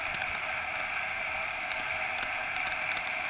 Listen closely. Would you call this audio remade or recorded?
recorded